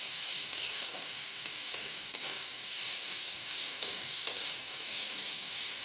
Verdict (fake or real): fake